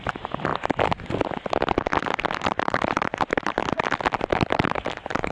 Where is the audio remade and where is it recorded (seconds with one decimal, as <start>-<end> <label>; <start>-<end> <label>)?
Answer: 0.0-0.5 remade; 0.5-2.4 recorded; 2.4-3.6 remade; 3.6-4.2 recorded; 4.2-5.3 remade

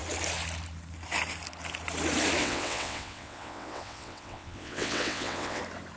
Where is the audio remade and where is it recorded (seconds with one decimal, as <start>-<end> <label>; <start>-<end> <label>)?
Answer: 0.0-2.4 recorded; 2.4-5.6 remade; 5.6-6.0 recorded

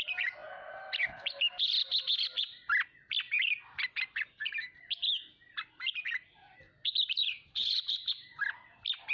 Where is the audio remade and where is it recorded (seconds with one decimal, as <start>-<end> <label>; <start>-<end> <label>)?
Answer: 0.0-7.2 recorded; 7.2-8.1 remade; 8.1-9.1 recorded